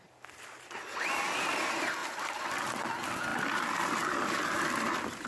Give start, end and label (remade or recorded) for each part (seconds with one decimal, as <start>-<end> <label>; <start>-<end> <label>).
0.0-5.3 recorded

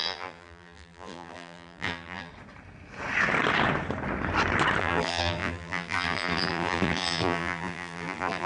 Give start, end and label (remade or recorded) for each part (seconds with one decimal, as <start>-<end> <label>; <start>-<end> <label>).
0.0-2.3 remade; 2.3-4.8 recorded; 4.8-8.5 remade

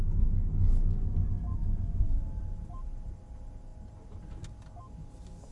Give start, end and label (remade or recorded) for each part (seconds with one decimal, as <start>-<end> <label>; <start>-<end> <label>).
0.0-1.6 recorded; 1.6-2.5 remade; 2.5-5.5 recorded